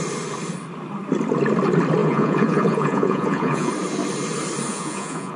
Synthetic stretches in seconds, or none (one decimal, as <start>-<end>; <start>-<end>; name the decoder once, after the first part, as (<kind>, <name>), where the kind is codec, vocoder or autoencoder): 2.0-3.7 (vocoder, Vocos); 4.7-5.4